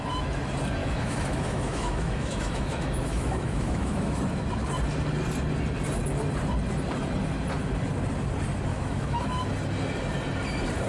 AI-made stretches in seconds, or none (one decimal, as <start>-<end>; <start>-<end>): 0.8-4.2; 8.7-9.4